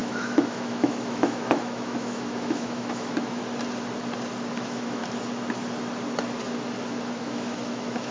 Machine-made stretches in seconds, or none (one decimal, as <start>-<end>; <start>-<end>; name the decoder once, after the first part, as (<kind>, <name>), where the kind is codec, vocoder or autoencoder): 0.0-3.4 (autoencoder, DAC-VAE); 4.5-5.0; 7.2-8.1

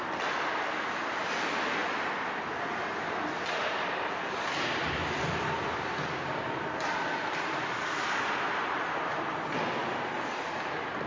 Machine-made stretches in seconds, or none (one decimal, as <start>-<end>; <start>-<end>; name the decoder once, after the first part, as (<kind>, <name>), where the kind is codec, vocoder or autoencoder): none

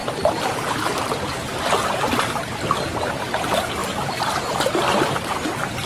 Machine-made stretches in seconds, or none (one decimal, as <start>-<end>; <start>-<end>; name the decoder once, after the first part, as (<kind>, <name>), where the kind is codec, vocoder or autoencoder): 0.0-1.0 (vocoder, BigVGAN v2); 3.8-5.2

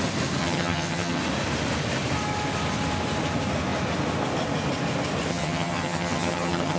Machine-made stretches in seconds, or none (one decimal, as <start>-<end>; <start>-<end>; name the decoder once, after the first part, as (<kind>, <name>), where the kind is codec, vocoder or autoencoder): 0.4-1.2 (vocoder, HiFi-GAN); 5.3-6.8